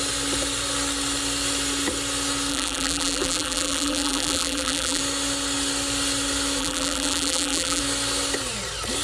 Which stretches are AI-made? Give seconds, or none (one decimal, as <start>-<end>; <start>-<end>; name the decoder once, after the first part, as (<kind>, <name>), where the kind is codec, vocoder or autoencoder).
2.5-5.0 (vocoder, BigVGAN v2); 6.6-7.8